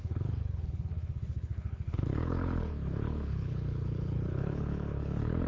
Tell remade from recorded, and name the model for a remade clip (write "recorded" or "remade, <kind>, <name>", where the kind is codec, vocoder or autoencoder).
remade, codec, HILCodec